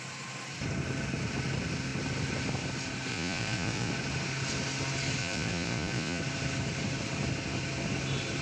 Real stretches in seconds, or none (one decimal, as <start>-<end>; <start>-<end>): 0.0-3.1; 3.9-5.2; 6.2-8.4